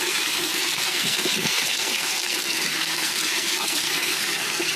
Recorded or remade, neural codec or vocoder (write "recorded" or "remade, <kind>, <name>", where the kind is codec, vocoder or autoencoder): remade, codec, SNAC